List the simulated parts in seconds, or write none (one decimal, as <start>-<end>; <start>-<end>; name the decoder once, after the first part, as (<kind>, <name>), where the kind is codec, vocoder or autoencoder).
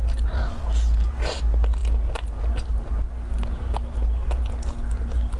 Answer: none